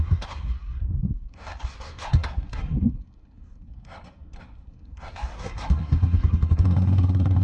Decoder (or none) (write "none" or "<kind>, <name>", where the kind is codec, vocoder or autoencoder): codec, SNAC